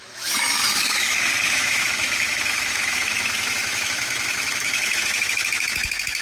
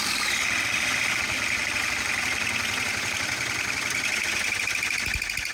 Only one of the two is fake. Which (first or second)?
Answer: first